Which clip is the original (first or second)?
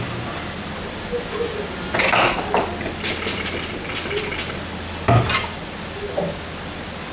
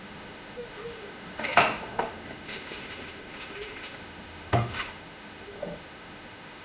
first